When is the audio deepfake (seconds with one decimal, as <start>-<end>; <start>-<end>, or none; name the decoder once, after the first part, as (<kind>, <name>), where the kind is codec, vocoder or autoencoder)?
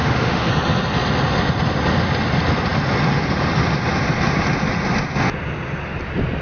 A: 0.0-0.5 (autoencoder, DAC-VAE)